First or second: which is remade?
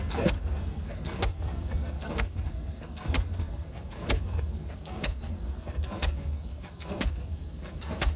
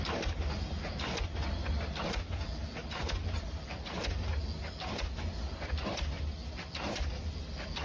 first